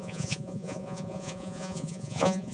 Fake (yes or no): yes